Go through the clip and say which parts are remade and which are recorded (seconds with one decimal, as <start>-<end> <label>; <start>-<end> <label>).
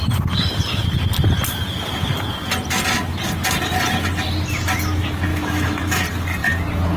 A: 0.0-5.3 recorded; 5.3-6.0 remade; 6.0-7.0 recorded